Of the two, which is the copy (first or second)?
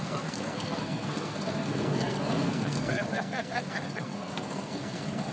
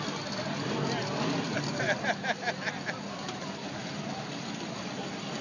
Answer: first